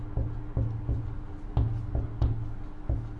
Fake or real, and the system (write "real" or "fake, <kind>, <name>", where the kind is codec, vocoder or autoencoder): real